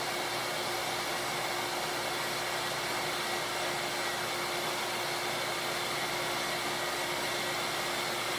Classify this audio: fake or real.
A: real